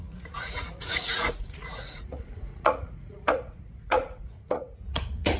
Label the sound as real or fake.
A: fake